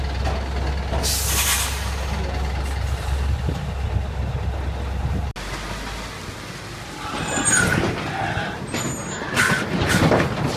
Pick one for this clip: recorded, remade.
recorded